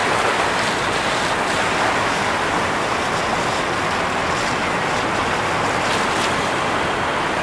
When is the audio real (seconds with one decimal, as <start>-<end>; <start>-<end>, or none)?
0.0-7.4